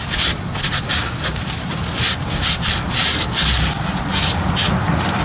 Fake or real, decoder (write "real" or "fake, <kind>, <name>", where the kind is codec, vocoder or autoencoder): real